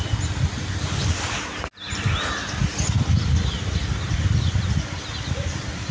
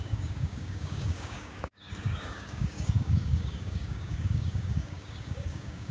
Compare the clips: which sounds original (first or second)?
first